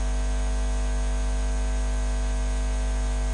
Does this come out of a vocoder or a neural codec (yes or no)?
no